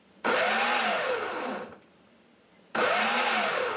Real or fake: real